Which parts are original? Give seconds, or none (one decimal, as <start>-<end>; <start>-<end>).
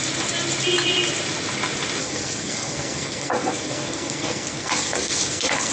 0.0-2.0